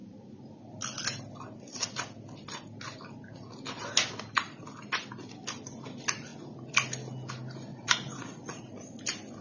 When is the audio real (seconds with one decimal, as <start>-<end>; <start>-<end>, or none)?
0.0-7.7; 8.6-9.4